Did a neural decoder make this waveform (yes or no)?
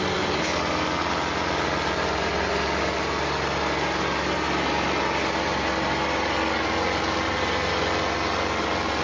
no